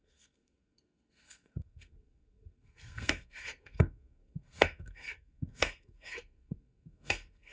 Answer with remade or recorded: remade